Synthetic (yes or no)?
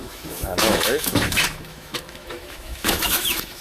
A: yes